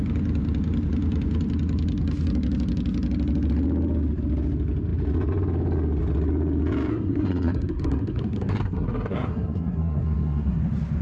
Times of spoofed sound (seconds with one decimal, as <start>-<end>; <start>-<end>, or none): 6.9-10.6